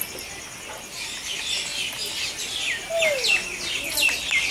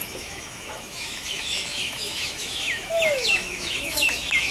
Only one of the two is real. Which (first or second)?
first